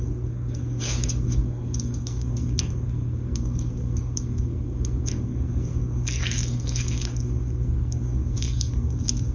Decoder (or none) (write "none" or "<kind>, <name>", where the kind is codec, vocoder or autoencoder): codec, SNAC